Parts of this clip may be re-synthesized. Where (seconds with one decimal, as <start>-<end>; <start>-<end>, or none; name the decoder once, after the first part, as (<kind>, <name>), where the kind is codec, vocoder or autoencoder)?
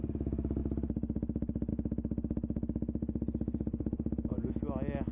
3.0-4.5 (vocoder, Vocos)